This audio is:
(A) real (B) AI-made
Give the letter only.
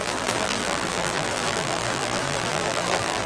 B